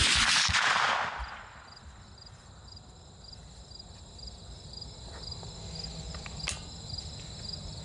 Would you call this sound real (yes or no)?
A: yes